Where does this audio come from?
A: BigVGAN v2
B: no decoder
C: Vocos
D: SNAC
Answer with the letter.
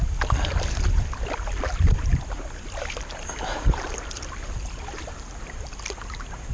B